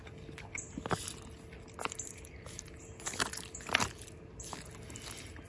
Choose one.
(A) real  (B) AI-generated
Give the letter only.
A